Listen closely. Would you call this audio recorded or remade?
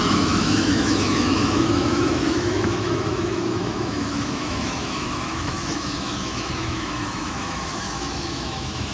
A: remade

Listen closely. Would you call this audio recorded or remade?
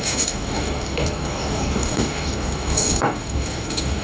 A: remade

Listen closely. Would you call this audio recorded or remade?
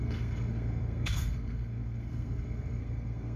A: remade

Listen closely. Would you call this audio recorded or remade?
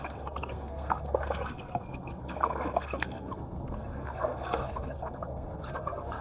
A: remade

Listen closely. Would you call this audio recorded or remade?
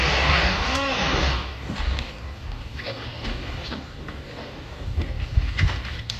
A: remade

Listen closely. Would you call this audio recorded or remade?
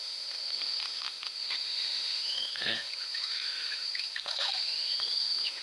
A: remade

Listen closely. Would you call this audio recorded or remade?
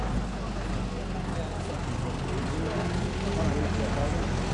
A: recorded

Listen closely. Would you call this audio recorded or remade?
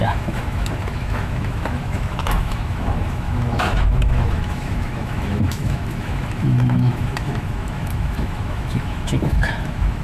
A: remade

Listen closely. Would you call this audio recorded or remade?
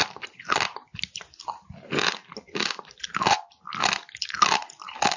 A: recorded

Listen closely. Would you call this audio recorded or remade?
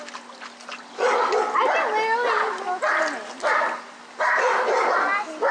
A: recorded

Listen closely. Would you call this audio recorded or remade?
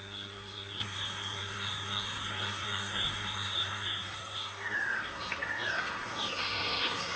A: remade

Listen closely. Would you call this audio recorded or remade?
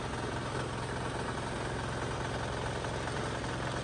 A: recorded